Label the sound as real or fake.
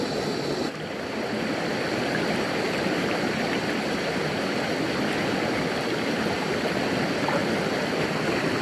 real